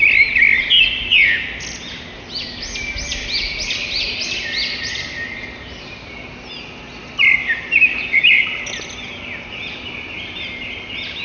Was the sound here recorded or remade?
recorded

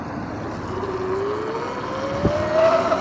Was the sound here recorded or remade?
recorded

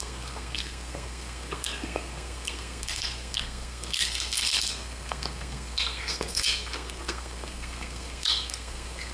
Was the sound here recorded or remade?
remade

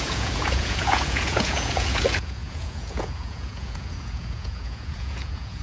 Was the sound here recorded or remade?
remade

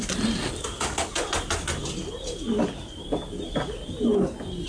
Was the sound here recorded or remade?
recorded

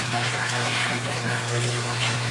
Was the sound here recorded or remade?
remade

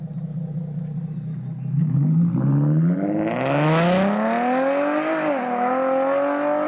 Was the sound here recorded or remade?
recorded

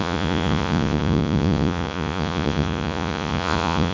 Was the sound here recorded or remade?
remade